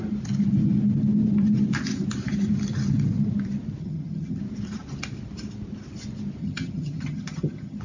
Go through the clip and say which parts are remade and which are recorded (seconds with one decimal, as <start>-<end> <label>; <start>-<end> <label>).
0.0-3.8 recorded; 3.8-4.4 remade; 4.4-6.4 recorded; 6.4-7.8 remade